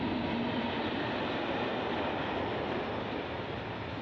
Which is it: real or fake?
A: real